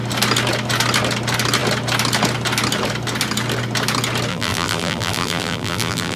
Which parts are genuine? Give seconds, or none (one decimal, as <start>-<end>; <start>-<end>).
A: 0.0-4.3